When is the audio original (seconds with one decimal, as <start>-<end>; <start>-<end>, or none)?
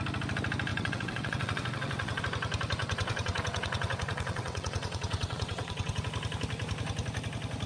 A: 0.0-0.7; 2.2-2.8; 6.0-7.7